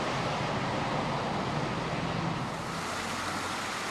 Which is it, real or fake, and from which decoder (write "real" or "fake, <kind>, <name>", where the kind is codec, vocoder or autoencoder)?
real